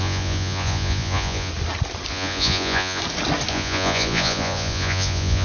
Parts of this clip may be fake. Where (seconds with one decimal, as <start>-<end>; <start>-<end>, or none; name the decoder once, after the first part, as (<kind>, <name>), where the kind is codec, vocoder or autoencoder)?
0.0-1.5 (vocoder, Vocos); 2.1-3.0; 3.5-5.4